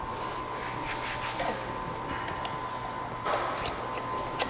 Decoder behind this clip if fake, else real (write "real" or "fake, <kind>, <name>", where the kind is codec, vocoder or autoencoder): real